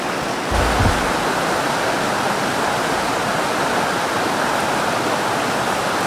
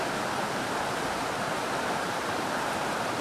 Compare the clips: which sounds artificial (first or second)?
second